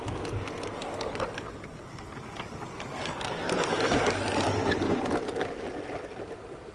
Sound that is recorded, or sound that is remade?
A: recorded